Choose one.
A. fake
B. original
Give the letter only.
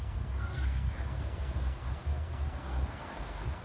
A